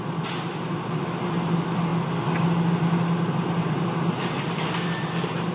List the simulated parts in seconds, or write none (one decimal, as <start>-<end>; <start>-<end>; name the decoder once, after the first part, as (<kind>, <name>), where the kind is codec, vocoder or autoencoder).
none